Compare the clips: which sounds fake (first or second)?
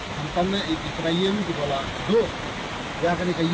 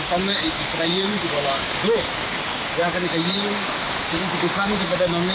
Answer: second